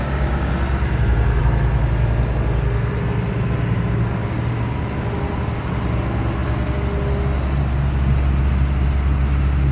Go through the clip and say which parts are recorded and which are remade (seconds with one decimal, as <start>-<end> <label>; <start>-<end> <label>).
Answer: 0.0-0.5 remade; 0.5-9.7 recorded